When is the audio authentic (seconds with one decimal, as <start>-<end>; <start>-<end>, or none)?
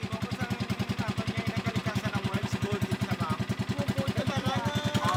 0.0-5.2